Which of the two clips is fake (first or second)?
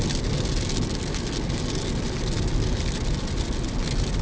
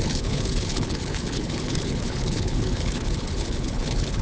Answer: second